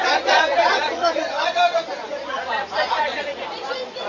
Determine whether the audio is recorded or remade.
remade